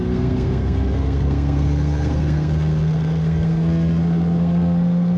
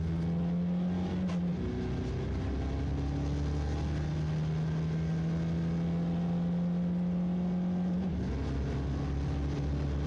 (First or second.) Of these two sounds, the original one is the second